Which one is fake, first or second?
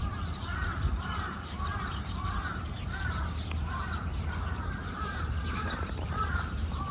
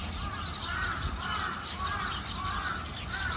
first